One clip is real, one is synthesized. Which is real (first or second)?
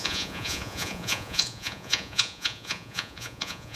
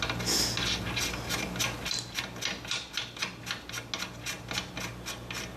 second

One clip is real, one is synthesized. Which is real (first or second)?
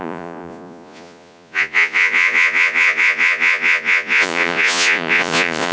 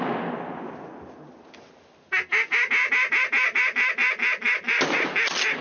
second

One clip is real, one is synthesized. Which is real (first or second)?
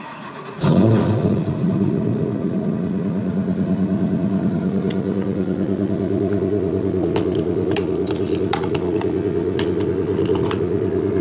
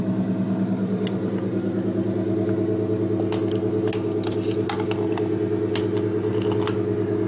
second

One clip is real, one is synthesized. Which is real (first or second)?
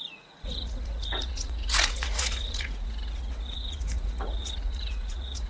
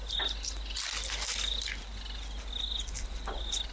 second